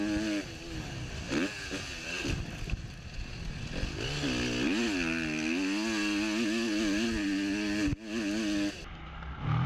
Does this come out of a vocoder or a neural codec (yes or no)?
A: no